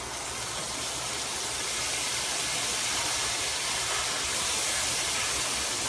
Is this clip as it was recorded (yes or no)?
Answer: yes